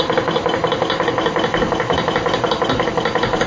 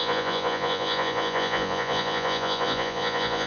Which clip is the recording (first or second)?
first